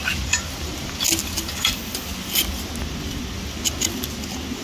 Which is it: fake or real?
real